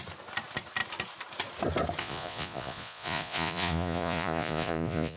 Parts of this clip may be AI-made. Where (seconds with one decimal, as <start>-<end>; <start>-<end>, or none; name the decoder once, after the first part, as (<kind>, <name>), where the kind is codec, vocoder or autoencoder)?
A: 2.0-5.2 (vocoder, Vocos)